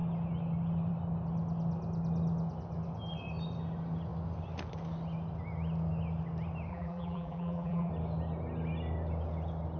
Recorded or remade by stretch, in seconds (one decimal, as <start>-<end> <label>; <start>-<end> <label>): 0.0-6.7 recorded; 6.7-7.9 remade; 7.9-9.8 recorded